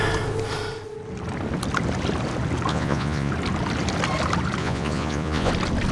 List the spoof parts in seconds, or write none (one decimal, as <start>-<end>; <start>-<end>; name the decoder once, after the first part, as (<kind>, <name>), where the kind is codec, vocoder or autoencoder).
2.7-3.3 (vocoder, Vocos); 4.6-5.5